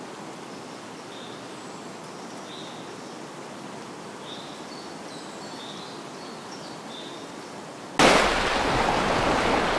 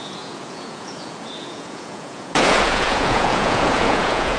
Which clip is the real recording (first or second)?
first